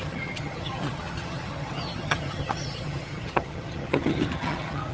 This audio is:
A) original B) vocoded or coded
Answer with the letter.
B